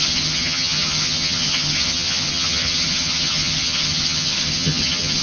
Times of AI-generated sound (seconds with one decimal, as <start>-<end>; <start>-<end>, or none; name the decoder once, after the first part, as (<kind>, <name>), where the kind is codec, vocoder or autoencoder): 0.0-5.2 (vocoder, HiFi-GAN)